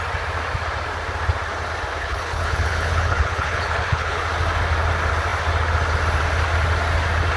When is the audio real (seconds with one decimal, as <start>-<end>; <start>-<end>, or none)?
0.0-2.0; 4.2-7.4